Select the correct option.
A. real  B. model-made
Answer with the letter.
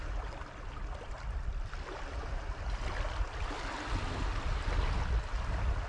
A